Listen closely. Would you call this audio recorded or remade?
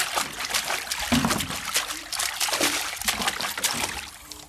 recorded